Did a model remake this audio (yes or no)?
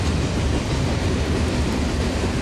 yes